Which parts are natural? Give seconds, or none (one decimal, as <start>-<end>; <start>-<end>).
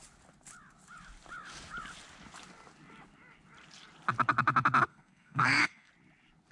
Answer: 0.0-4.9; 5.9-6.5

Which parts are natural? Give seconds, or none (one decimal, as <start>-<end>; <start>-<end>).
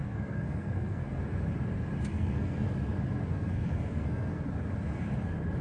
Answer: 1.2-2.1; 2.7-3.3; 4.4-5.6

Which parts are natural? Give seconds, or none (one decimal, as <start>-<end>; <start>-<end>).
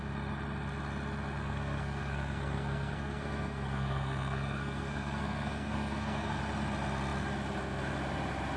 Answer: 0.0-1.4; 6.4-8.6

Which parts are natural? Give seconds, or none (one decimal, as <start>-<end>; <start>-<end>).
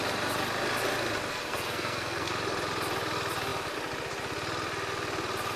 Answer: 0.0-1.3; 2.3-5.6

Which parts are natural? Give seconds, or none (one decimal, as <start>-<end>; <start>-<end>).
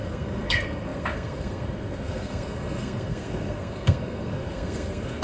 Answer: none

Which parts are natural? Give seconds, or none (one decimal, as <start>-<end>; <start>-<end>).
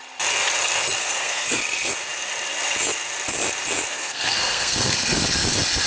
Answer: 0.0-1.0; 1.6-3.9; 5.2-5.9